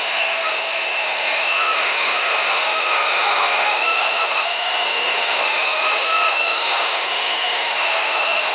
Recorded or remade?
remade